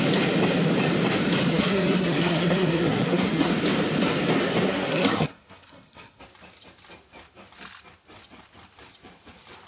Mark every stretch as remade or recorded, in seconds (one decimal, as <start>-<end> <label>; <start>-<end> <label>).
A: 0.0-1.5 recorded; 1.5-3.5 remade; 3.5-4.7 recorded; 4.7-6.2 remade; 6.2-9.7 recorded